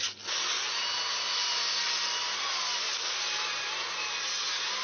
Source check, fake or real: real